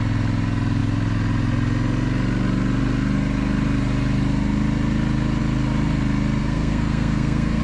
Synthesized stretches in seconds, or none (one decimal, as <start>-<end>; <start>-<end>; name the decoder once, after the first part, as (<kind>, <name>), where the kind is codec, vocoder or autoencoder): 6.4-7.6 (codec, SNAC)